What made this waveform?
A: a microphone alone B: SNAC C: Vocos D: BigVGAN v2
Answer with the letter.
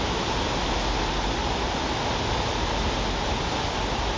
A